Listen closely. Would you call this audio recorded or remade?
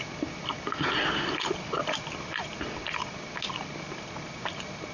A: recorded